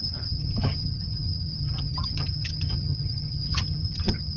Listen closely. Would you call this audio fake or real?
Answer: fake